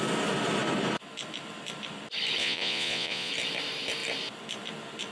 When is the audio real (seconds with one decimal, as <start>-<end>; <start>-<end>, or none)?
0.0-2.4; 3.3-5.1